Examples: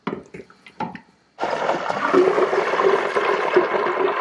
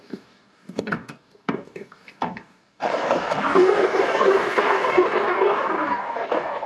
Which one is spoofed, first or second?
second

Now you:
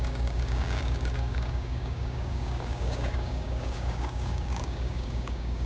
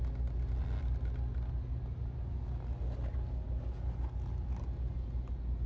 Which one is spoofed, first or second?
first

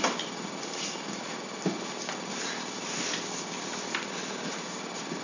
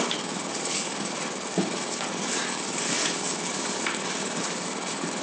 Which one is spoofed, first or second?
second